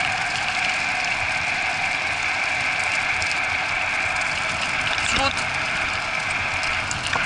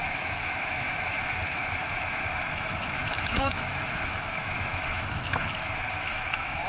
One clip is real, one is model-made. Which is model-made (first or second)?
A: second